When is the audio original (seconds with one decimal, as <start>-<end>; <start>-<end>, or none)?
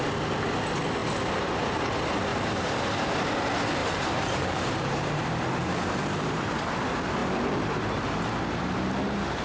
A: 0.0-2.3; 3.1-3.8; 6.5-7.2; 8.2-9.4